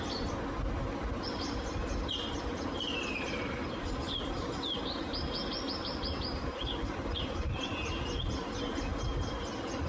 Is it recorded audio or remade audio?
recorded